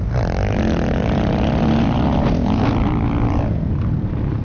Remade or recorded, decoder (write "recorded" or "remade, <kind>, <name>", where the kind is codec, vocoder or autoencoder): recorded